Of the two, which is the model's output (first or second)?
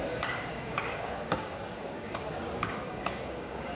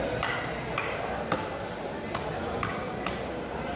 first